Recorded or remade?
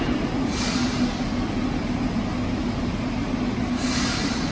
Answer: recorded